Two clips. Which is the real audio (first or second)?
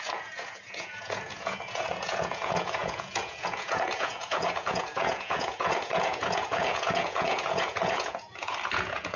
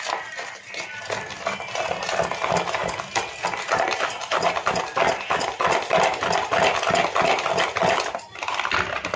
second